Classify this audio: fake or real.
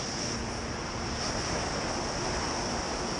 real